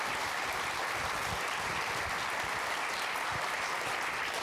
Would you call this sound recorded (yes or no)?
yes